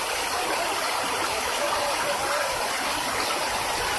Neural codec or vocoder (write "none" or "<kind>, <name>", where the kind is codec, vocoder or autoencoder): none